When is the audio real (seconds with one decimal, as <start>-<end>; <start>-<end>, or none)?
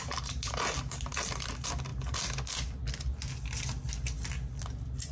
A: 0.0-5.1